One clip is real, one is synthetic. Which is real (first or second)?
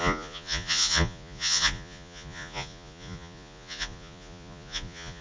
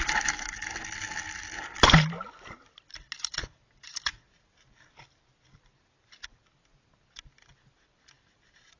second